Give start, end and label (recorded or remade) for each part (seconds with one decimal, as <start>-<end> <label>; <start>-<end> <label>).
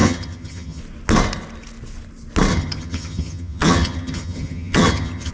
0.0-0.8 remade; 0.8-2.5 recorded; 2.5-5.3 remade